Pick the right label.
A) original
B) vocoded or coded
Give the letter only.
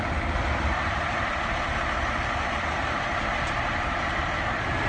B